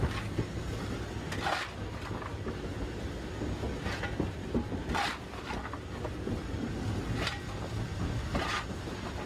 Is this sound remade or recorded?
recorded